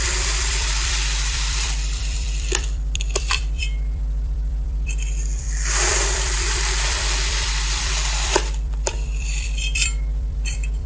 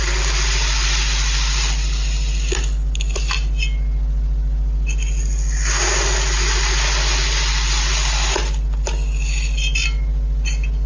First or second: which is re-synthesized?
first